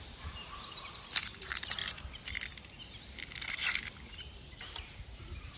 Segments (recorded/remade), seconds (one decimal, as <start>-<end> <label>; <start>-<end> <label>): 0.0-1.8 remade; 1.8-4.8 recorded; 4.8-5.6 remade